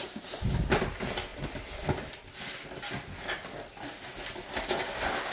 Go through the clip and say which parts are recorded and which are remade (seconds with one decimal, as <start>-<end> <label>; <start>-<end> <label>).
0.0-5.3 recorded